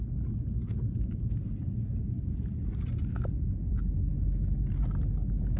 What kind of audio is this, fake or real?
real